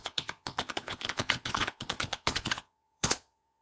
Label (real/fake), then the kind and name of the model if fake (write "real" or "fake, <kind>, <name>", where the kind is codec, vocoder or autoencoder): fake, vocoder, Vocos